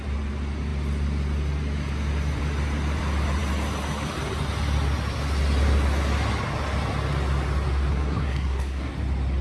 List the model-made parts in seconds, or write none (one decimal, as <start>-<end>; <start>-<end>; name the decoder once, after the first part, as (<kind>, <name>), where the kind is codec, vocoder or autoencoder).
7.9-8.9 (codec, SNAC)